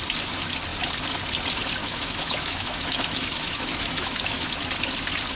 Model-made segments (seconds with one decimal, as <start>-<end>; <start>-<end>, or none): 1.8-4.5